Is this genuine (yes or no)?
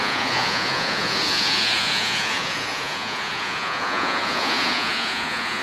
no